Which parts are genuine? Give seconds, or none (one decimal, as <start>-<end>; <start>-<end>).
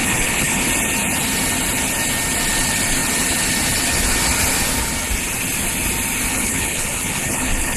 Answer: 0.7-6.3